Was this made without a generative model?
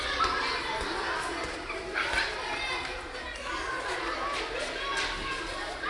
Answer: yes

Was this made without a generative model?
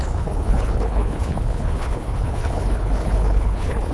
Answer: no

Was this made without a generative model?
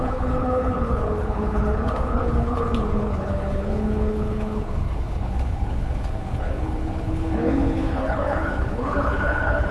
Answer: no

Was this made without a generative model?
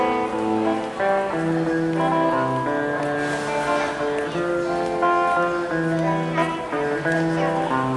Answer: yes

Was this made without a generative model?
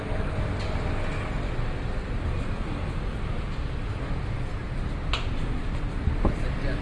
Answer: yes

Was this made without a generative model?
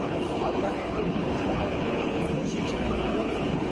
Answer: no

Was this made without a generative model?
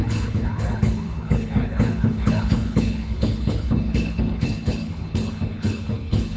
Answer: no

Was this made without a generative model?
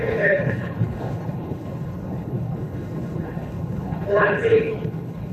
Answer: no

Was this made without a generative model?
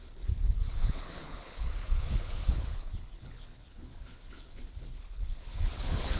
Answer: no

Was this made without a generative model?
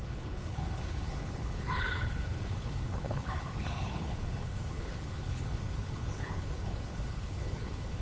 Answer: no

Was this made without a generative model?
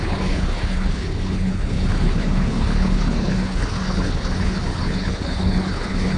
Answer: no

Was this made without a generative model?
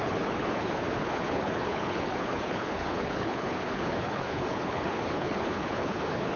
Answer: no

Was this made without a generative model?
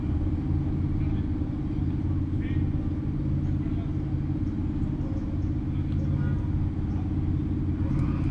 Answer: yes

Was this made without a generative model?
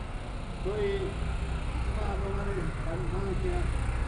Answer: yes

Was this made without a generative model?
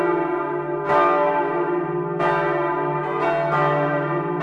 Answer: yes